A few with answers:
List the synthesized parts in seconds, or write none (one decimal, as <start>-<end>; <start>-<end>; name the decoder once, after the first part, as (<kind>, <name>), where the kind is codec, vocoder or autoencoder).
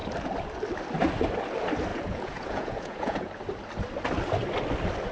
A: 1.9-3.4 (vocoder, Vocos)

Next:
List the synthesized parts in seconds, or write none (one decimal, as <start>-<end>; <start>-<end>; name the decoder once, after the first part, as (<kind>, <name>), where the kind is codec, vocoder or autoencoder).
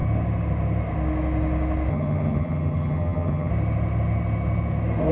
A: 1.9-3.5 (vocoder, HiFi-GAN)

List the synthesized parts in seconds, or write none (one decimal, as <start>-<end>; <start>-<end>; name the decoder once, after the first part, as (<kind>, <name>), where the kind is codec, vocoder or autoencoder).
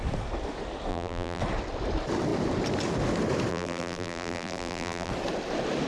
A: 0.9-1.4 (vocoder, BigVGAN v2); 3.5-5.1